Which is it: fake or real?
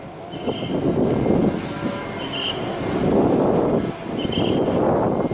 real